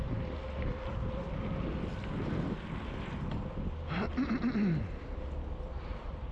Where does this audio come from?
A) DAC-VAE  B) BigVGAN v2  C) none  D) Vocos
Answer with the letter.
C